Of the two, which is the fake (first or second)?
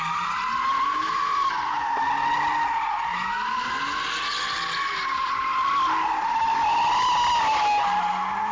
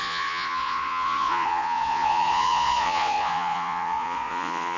second